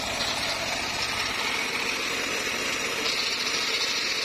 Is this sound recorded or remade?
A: recorded